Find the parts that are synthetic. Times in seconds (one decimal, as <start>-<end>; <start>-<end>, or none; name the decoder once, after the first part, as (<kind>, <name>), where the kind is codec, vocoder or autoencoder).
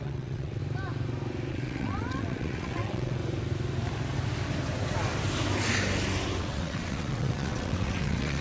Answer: 0.0-0.6 (vocoder, WaveNeXt); 1.5-3.2; 6.4-8.4